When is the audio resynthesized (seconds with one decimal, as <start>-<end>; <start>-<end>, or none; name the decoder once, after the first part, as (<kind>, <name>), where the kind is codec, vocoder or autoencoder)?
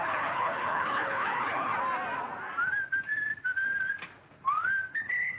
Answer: 0.0-1.7 (codec, HILCodec); 4.9-5.4